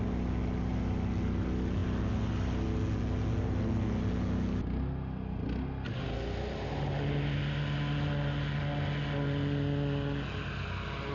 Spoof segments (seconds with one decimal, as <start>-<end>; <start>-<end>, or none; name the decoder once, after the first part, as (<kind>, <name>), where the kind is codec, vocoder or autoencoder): none